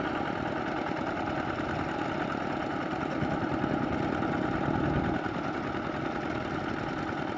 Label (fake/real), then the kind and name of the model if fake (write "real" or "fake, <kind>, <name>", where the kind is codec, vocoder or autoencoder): real